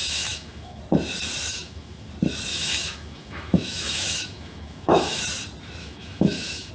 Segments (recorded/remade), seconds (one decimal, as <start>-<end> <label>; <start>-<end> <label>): 0.0-0.8 remade; 0.8-1.5 recorded; 1.5-2.1 remade; 2.1-2.5 recorded; 2.5-5.2 remade; 5.2-5.8 recorded; 5.8-6.7 remade

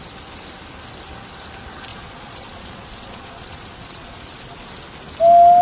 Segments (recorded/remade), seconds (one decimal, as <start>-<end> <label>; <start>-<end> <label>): 0.0-1.9 recorded; 1.9-4.7 remade; 4.7-5.6 recorded

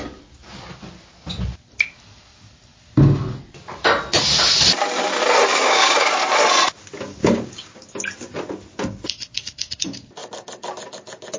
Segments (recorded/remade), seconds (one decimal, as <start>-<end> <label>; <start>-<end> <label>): 0.0-5.5 recorded; 5.5-6.2 remade; 6.2-7.2 recorded; 7.2-7.9 remade; 7.9-11.4 recorded

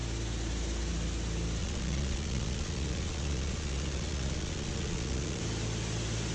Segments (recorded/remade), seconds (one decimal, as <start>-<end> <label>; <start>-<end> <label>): 0.0-1.6 recorded; 1.6-5.4 remade; 5.4-6.3 recorded

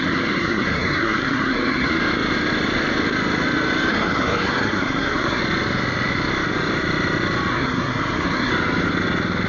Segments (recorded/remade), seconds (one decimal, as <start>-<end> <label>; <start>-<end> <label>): 0.0-2.0 remade; 2.0-3.9 recorded; 3.9-5.4 remade; 5.4-7.5 recorded; 7.5-8.5 remade; 8.5-9.5 recorded

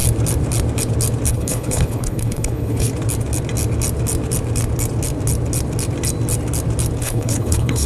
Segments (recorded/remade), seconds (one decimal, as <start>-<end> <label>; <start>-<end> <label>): 0.0-1.3 recorded; 1.3-2.9 remade; 2.9-7.0 recorded; 7.0-7.9 remade